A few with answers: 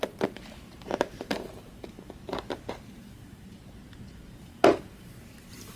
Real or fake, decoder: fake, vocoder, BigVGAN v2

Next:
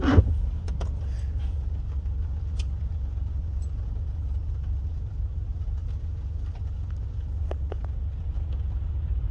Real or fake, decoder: fake, vocoder, BigVGAN v2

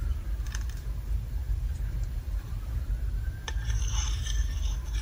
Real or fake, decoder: fake, vocoder, BigVGAN v2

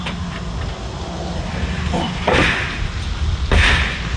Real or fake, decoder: real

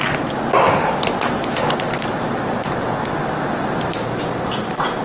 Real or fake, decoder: real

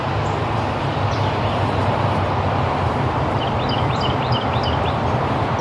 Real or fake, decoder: fake, vocoder, BigVGAN v2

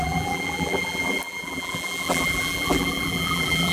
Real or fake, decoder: fake, vocoder, BigVGAN v2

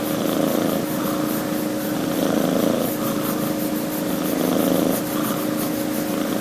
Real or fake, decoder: real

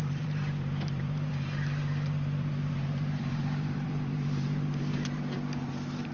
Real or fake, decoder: fake, vocoder, BigVGAN v2